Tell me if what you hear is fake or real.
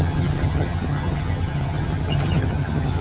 fake